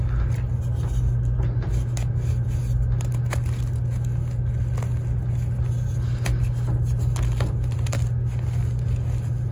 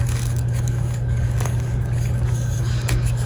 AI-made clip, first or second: second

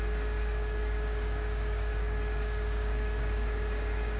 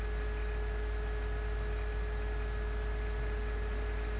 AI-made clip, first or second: first